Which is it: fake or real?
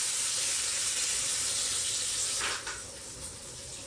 real